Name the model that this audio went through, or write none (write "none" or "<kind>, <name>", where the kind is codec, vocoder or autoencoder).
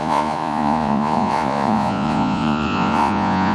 vocoder, Vocos